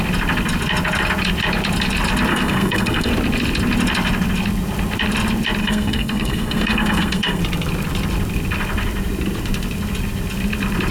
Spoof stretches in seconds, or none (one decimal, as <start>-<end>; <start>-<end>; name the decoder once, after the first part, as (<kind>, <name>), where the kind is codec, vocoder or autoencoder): 2.3-3.1 (codec, SNAC); 5.6-7.4